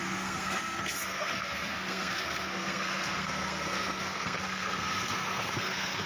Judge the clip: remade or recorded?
remade